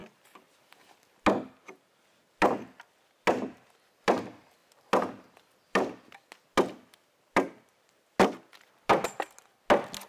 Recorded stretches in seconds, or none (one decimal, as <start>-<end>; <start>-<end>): 0.0-10.1